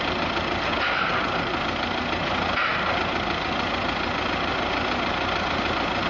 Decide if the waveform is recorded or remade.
recorded